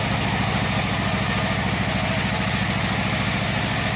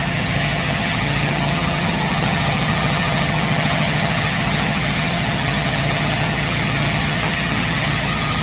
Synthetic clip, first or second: second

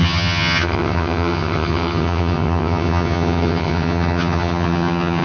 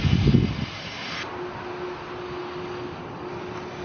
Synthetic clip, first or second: first